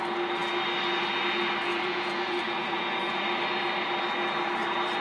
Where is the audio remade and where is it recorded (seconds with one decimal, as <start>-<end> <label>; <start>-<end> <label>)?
0.0-1.7 recorded; 1.7-3.2 remade; 3.2-5.0 recorded